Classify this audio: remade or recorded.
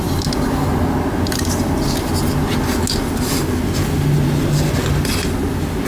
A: recorded